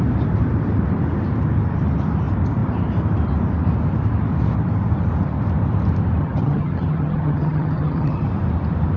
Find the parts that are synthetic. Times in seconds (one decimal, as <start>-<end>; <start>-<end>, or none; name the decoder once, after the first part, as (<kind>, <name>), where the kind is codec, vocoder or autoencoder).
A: 6.2-8.3 (vocoder, HiFi-GAN)